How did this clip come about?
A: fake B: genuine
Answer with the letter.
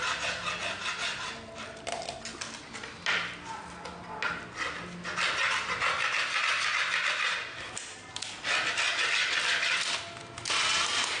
B